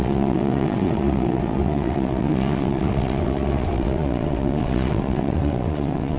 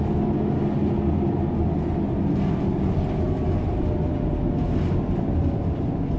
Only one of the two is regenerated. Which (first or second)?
first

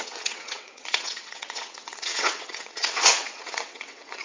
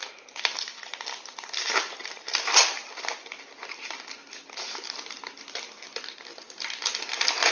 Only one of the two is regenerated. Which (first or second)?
first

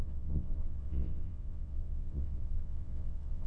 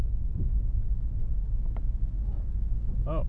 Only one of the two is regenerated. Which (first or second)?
first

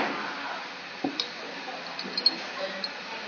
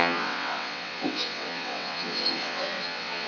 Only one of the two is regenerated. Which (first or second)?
second